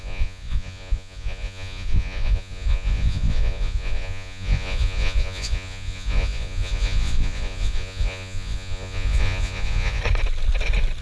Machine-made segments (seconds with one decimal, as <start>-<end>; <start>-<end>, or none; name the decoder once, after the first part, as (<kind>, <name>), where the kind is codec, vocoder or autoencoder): 0.0-10.0 (vocoder, Vocos)